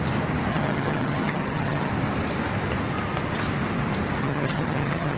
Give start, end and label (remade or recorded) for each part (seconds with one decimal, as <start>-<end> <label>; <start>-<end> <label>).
0.0-0.5 recorded; 0.5-1.9 remade; 1.9-4.2 recorded; 4.2-5.2 remade